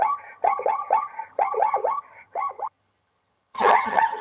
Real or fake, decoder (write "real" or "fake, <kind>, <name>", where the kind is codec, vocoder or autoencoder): fake, vocoder, HiFi-GAN